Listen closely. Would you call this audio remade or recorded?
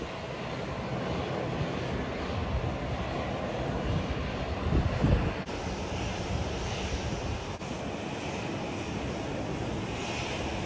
recorded